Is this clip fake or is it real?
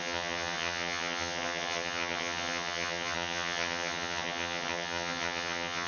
fake